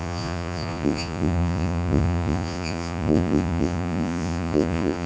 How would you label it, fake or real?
fake